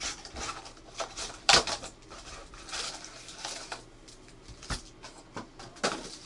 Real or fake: real